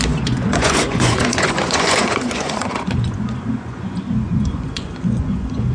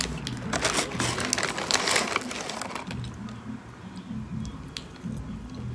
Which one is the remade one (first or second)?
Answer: first